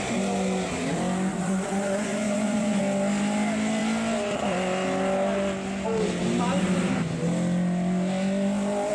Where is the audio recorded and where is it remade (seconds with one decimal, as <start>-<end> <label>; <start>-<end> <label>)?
0.0-1.3 recorded; 1.3-2.8 remade; 2.8-8.9 recorded